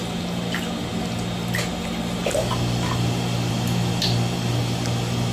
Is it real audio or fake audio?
real